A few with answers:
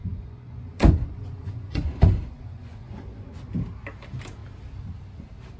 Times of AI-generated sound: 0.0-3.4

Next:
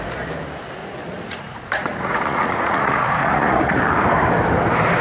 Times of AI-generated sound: 0.8-3.8

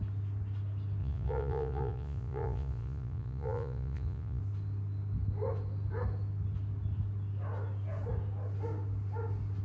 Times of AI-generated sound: 1.0-4.4